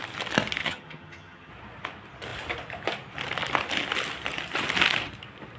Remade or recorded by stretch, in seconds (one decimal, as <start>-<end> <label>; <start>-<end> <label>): 0.0-0.6 recorded; 0.6-1.5 remade; 1.5-5.6 recorded